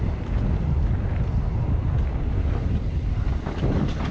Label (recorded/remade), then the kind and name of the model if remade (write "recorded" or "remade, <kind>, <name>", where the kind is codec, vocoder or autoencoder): recorded